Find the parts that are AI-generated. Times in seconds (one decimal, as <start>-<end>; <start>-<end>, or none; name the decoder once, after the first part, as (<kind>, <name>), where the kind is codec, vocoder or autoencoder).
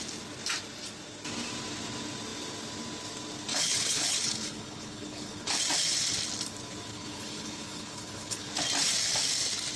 3.5-5.6 (codec, HILCodec); 6.9-8.5